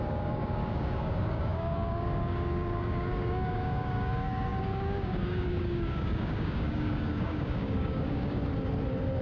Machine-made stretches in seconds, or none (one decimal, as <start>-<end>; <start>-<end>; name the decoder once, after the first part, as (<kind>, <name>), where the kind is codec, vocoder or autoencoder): 0.0-8.4 (codec, DAC)

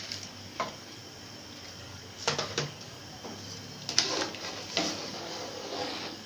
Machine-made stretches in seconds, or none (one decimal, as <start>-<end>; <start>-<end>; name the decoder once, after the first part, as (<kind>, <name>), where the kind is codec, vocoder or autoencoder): 0.0-1.0 (codec, DAC); 1.8-3.0; 5.1-6.3

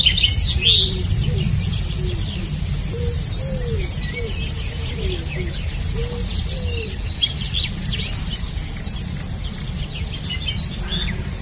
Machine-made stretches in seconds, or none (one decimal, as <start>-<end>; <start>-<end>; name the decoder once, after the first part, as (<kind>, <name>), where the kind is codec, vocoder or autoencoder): none

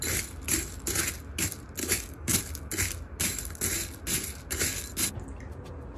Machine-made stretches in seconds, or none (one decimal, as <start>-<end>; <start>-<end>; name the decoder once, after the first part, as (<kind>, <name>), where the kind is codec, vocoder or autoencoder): 1.8-2.4 (codec, DAC)

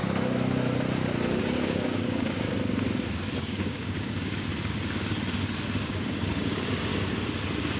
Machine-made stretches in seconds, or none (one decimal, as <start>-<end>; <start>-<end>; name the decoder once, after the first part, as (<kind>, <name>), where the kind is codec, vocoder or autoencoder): 1.4-2.5 (codec, DAC); 3.4-4.5; 5.8-6.9

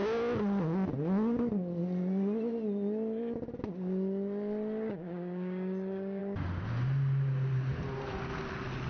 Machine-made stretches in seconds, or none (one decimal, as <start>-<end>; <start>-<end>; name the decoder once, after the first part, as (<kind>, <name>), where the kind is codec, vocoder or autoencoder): 4.9-6.2 (codec, DAC)

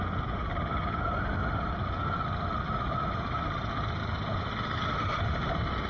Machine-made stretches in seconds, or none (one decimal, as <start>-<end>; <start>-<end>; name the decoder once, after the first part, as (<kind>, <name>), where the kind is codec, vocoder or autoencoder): none

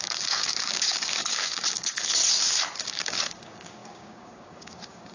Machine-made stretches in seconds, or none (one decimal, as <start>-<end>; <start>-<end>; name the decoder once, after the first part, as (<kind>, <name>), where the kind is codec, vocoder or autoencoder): 0.0-2.2 (codec, DAC); 2.8-5.1